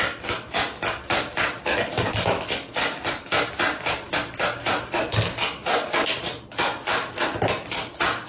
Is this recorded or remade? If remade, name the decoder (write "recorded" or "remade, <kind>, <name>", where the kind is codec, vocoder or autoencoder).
recorded